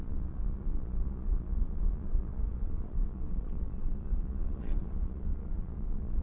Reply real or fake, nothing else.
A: fake